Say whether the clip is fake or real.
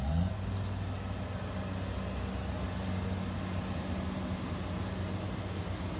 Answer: real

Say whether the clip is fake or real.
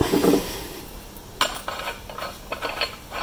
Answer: real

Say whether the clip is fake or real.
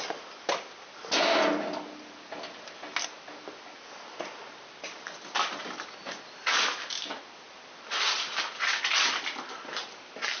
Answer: real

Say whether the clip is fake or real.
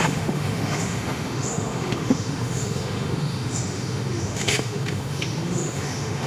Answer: fake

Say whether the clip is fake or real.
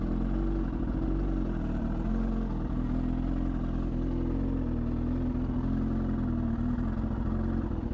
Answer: real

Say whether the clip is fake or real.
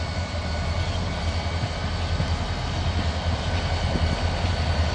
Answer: real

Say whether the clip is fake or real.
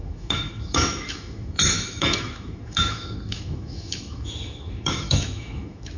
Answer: fake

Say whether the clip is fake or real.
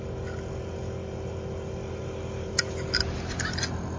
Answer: real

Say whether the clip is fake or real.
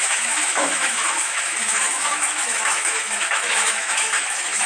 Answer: fake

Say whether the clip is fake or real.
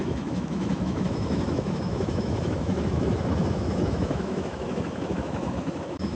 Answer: fake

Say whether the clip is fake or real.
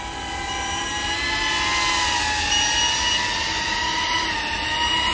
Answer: real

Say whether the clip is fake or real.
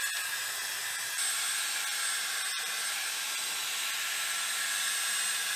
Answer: real